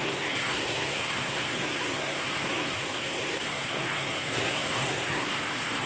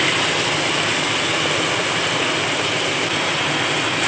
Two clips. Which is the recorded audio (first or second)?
second